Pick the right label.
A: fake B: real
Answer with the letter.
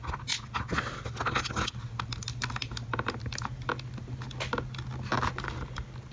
B